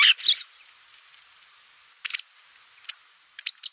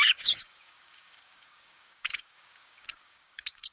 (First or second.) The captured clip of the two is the first